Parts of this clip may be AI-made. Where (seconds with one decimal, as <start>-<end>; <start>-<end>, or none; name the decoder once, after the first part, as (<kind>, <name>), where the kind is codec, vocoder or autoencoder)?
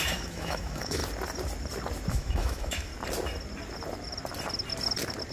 0.0-1.0 (autoencoder, DAC-VAE); 2.1-2.9